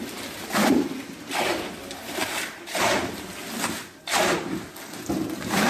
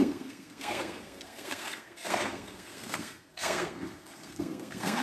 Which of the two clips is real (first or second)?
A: first